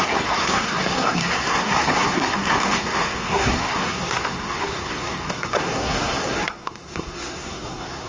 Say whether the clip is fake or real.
fake